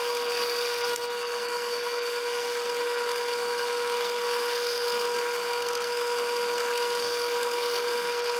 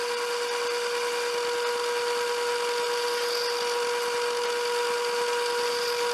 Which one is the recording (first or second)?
second